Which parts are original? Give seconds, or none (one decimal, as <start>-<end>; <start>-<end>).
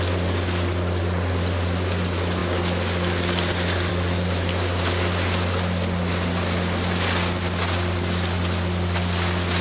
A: 0.0-9.6